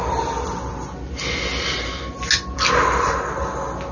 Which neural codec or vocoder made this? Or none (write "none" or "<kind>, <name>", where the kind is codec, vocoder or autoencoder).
none